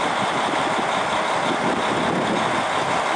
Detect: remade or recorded recorded